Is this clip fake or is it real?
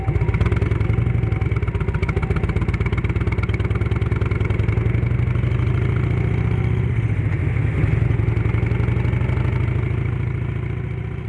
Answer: real